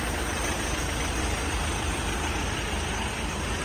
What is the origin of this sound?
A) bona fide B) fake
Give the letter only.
A